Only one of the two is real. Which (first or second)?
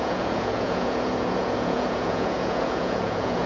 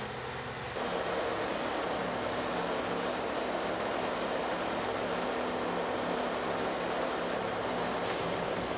second